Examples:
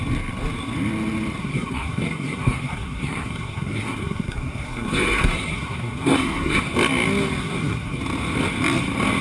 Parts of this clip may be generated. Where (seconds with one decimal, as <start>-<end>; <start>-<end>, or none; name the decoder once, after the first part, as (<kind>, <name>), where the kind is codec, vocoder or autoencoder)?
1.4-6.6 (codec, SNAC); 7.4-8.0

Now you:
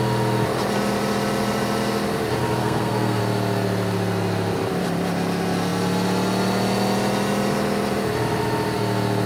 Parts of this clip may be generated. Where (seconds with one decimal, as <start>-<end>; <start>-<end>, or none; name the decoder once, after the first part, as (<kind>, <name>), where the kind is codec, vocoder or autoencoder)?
2.6-3.2 (codec, SNAC)

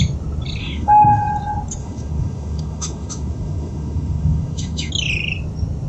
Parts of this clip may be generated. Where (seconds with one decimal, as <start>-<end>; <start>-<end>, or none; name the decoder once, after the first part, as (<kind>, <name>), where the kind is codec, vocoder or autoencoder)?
0.6-1.2 (autoencoder, DAC-VAE); 1.8-4.9

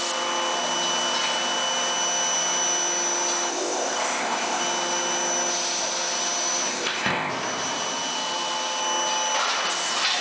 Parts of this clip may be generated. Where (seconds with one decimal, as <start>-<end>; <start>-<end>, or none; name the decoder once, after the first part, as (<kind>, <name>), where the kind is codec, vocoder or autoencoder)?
3.5-4.6 (codec, ZipCodec); 6.7-7.3